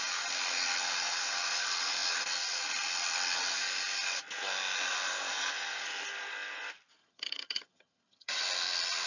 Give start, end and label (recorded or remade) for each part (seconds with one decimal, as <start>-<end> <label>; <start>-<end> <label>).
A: 0.0-7.0 recorded; 7.0-8.4 remade; 8.4-9.1 recorded